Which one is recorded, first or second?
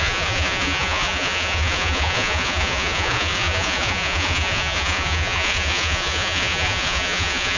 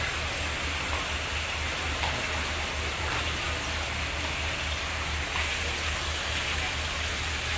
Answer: second